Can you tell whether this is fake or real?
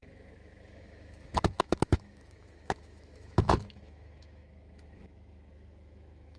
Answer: fake